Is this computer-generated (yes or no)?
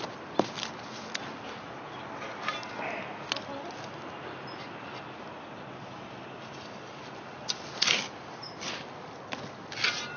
no